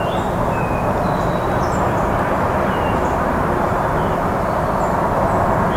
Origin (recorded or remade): recorded